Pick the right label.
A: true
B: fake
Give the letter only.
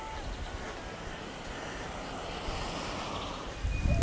A